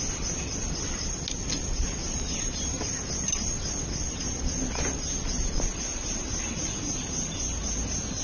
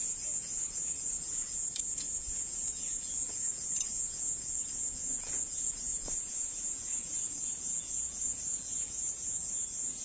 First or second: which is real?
first